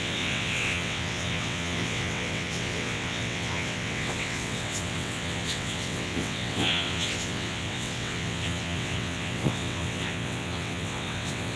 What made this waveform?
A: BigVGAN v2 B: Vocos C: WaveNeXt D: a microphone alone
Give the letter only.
C